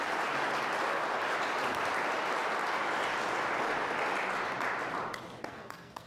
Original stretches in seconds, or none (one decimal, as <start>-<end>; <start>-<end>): 0.0-5.4